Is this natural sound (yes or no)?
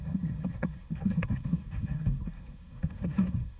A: no